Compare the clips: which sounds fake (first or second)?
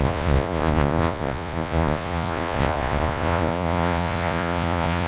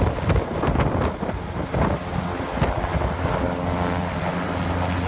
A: first